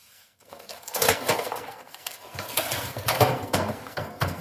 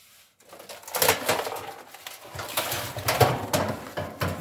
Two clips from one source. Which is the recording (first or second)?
second